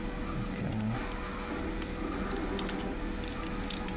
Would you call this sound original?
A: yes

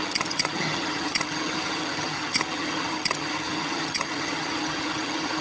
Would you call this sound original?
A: no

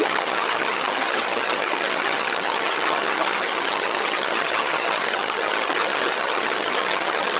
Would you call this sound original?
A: no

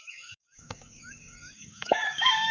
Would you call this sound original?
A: no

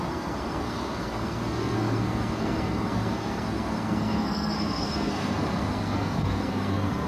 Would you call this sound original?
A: no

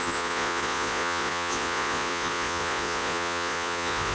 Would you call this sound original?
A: no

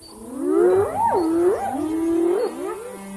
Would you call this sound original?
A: yes